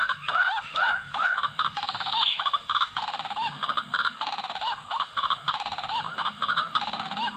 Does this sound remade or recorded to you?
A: remade